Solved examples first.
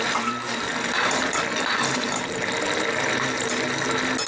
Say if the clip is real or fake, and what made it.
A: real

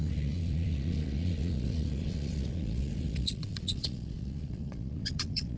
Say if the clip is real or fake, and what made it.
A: fake, vocoder, Vocos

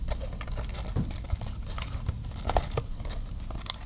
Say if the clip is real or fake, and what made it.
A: real